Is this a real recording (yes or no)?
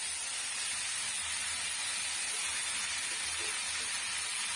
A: yes